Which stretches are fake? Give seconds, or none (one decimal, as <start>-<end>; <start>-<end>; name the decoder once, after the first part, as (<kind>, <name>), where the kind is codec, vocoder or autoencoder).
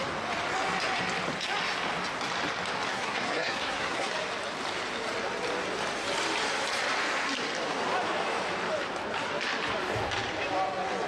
2.9-4.1 (codec, SNAC)